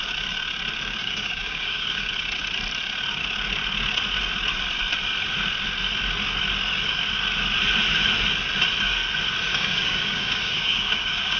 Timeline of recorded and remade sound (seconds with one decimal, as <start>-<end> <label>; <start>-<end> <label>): 0.0-1.0 recorded; 1.0-2.1 remade; 2.1-9.5 recorded; 9.5-11.4 remade